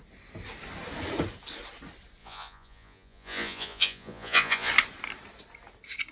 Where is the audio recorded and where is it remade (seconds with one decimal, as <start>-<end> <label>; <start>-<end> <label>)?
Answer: 0.0-2.2 recorded; 2.2-4.7 remade; 4.7-6.1 recorded